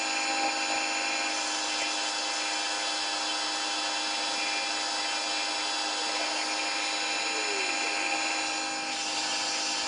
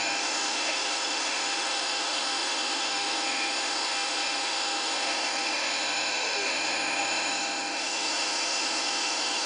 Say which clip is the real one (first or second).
first